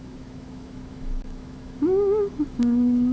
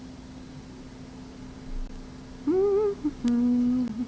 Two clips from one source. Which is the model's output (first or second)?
first